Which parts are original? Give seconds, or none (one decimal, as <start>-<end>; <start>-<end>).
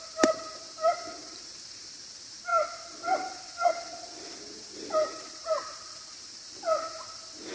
0.0-2.5; 3.7-5.0; 6.6-7.5